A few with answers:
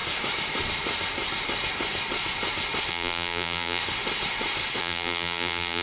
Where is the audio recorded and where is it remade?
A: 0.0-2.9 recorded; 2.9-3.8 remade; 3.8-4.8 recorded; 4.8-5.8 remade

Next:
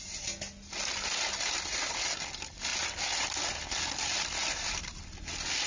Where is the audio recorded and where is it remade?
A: 0.0-5.7 recorded

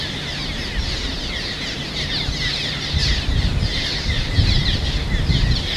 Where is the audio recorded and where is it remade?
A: 0.0-5.8 recorded

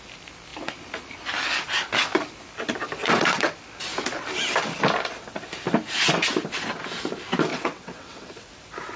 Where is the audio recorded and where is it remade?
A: 0.0-3.0 recorded; 3.0-3.5 remade; 3.5-7.5 recorded; 7.5-8.5 remade; 8.5-9.0 recorded

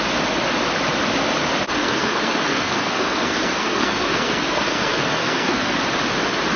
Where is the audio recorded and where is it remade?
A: 0.0-1.8 recorded; 1.8-5.8 remade; 5.8-6.6 recorded